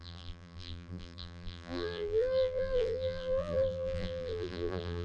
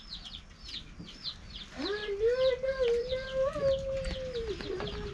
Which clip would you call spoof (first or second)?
first